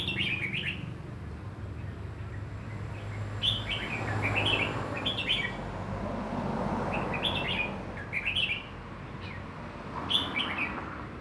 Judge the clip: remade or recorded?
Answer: recorded